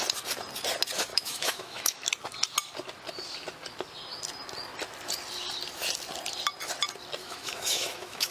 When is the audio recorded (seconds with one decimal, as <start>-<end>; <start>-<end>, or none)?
0.0-1.1; 2.1-7.2

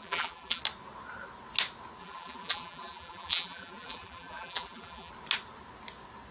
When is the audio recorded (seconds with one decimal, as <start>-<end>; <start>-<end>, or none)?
0.6-2.0; 5.1-6.3

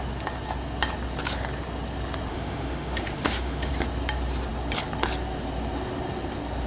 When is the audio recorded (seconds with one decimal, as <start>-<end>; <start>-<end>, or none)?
0.0-2.3; 3.7-6.7

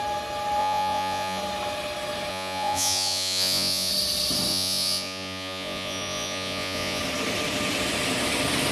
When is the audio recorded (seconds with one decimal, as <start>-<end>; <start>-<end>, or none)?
0.0-0.6; 1.4-2.3; 3.9-4.5; 7.0-8.7

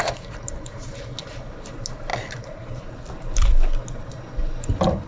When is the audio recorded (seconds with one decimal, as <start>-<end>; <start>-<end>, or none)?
0.0-5.1

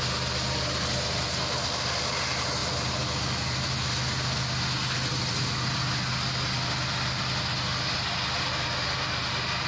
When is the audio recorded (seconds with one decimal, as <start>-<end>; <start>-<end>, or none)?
0.0-9.7

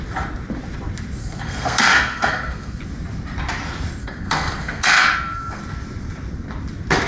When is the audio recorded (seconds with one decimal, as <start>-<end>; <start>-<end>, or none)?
0.0-1.2; 2.8-4.0; 5.6-7.1